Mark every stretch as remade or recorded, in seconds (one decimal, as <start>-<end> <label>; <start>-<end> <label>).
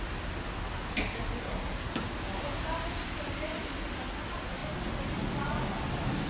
0.0-1.4 recorded; 1.4-2.0 remade; 2.0-6.3 recorded